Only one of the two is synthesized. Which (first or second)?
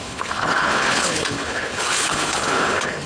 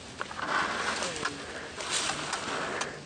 first